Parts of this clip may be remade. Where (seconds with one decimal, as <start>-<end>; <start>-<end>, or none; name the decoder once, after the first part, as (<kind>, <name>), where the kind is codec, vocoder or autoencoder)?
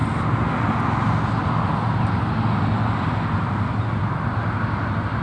none